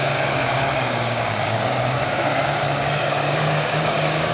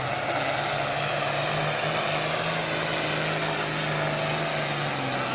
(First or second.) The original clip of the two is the second